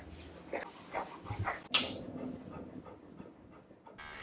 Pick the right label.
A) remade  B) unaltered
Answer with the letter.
B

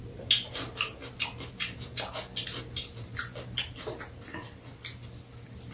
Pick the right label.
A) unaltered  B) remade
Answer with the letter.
A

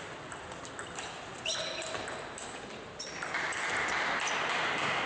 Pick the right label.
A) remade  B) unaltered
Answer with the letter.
B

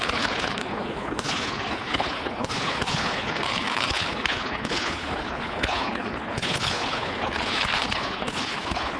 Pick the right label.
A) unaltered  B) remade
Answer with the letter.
B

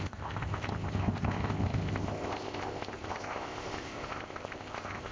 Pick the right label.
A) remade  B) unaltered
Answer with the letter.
A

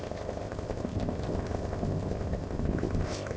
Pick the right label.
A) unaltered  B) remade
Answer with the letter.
B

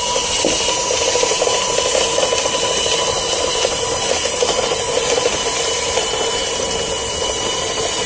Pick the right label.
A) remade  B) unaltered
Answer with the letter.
B